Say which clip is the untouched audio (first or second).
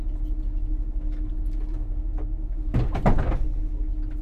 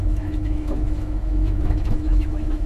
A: first